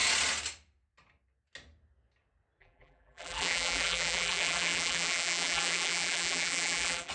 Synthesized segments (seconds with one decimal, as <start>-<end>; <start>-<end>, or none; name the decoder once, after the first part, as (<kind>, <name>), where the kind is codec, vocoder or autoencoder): 2.6-7.1 (vocoder, BigVGAN v2)